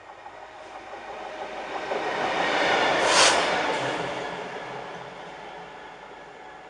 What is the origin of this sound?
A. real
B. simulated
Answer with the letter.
A